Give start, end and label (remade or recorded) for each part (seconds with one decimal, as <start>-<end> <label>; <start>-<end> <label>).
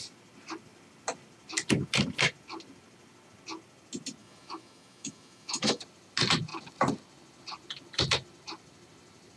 0.0-4.2 recorded; 4.2-5.8 remade; 5.8-9.4 recorded